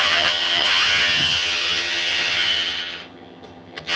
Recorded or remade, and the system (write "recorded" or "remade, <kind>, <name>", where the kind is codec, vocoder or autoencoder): remade, vocoder, HiFi-GAN